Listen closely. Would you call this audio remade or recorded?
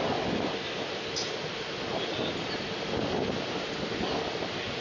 recorded